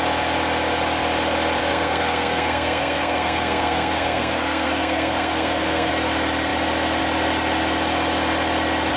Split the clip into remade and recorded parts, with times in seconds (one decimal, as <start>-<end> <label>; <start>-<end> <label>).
0.0-1.7 recorded; 1.7-5.9 remade; 5.9-9.0 recorded